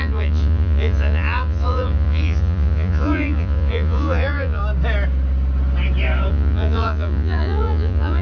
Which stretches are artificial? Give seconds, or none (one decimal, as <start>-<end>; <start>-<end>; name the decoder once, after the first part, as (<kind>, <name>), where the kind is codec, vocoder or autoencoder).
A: 0.0-4.6 (vocoder, Vocos); 6.3-8.2